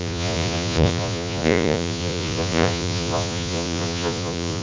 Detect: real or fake fake